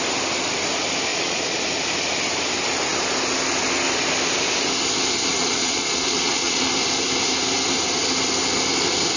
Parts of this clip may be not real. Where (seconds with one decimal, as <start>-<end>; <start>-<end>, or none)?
1.1-1.6; 5.4-6.7

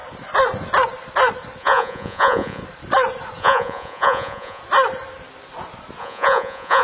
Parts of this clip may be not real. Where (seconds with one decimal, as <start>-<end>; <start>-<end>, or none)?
1.6-2.6; 3.4-4.6; 6.0-6.8